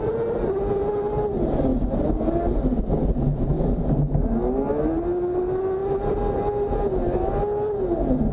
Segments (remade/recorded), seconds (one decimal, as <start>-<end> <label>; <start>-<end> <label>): 0.0-8.3 recorded

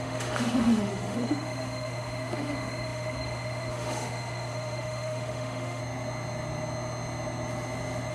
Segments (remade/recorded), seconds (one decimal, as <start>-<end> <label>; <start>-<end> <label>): 0.0-5.8 remade; 5.8-8.1 recorded

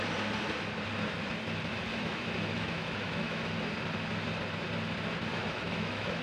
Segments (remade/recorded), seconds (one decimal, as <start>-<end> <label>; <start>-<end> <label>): 0.0-1.9 recorded; 1.9-3.5 remade; 3.5-5.3 recorded; 5.3-6.2 remade

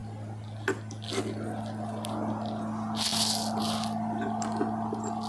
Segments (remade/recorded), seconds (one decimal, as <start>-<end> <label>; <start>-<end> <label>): 0.0-5.3 recorded

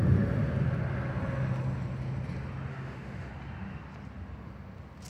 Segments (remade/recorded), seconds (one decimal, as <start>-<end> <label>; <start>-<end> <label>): 0.0-2.7 recorded; 2.7-3.3 remade; 3.3-5.1 recorded

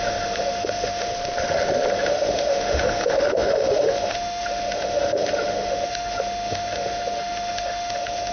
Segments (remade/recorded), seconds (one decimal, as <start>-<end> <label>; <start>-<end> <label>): 0.0-1.1 remade; 1.1-1.9 recorded; 1.9-8.3 remade

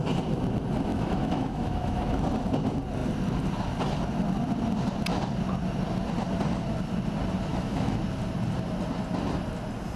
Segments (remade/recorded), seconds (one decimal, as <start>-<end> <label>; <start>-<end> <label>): 0.0-0.9 recorded; 0.9-2.2 remade; 2.2-7.5 recorded; 7.5-8.0 remade; 8.0-10.0 recorded